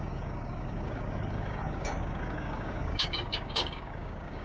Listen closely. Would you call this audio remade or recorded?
remade